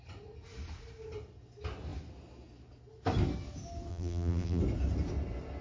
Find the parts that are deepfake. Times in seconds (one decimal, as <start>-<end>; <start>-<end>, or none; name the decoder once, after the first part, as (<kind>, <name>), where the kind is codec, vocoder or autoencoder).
3.9-4.6 (vocoder, BigVGAN v2)